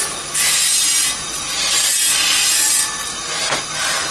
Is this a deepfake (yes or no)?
no